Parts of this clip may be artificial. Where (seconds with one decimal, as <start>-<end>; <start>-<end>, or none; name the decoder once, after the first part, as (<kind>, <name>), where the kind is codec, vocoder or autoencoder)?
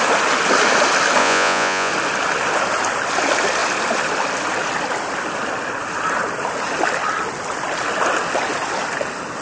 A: 1.2-1.9 (vocoder, Vocos)